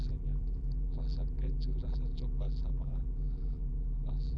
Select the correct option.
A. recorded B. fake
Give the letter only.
B